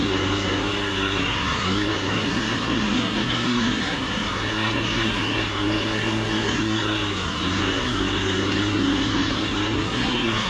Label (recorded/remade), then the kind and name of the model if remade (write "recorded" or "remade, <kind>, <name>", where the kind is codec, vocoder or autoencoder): remade, codec, SNAC